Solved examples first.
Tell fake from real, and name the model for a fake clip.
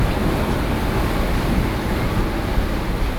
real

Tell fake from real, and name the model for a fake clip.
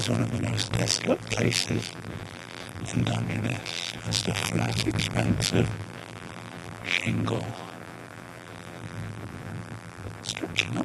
fake, vocoder, BigVGAN v2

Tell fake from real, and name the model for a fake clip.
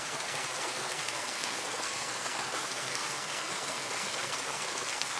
fake, codec, SNAC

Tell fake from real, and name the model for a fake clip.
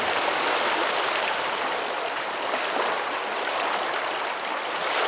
real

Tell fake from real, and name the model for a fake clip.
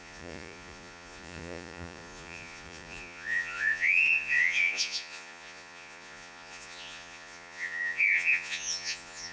fake, vocoder, Vocos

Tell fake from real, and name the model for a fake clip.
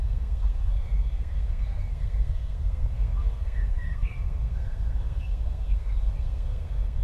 fake, codec, SNAC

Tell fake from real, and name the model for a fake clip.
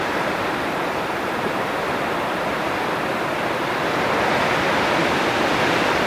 fake, vocoder, BigVGAN v2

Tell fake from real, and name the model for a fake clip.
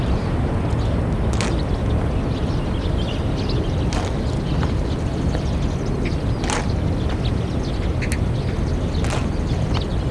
real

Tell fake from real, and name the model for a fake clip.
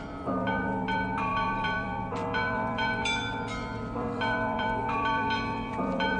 fake, vocoder, BigVGAN v2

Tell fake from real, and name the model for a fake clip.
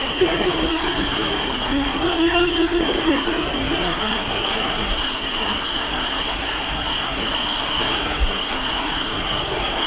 fake, codec, SNAC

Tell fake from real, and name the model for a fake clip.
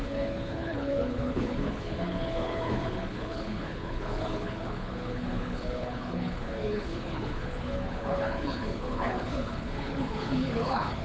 fake, codec, HILCodec